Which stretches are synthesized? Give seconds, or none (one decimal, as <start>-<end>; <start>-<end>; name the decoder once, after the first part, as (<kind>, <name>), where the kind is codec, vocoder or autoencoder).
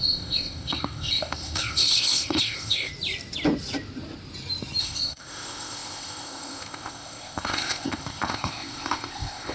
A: 0.0-2.9 (codec, ZipCodec); 4.8-9.5